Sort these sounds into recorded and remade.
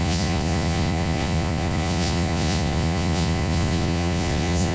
remade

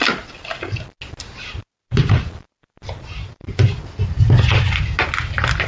recorded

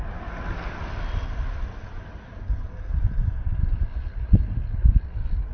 recorded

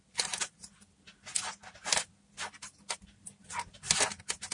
recorded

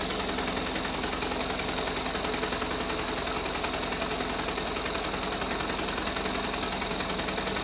recorded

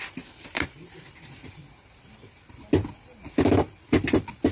recorded